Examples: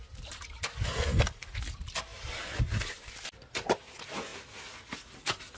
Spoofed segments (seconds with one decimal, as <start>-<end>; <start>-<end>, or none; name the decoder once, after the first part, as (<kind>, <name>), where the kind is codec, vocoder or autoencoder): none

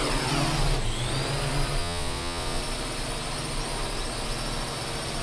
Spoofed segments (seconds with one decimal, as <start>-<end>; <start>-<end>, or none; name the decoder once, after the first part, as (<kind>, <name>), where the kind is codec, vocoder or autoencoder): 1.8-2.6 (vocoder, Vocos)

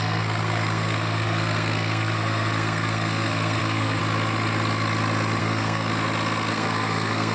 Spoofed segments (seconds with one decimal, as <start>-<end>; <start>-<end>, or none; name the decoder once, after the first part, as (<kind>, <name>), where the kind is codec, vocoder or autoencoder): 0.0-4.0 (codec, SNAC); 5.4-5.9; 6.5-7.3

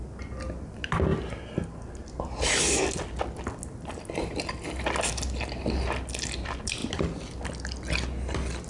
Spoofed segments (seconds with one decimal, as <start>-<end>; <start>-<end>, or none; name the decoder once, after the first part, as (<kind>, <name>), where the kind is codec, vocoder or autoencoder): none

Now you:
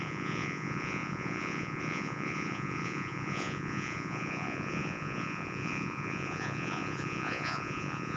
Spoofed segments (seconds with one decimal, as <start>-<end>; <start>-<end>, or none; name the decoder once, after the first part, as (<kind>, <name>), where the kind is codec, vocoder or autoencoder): 0.0-8.2 (vocoder, Vocos)